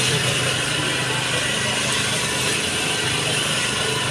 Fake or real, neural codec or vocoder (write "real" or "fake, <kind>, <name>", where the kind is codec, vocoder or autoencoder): real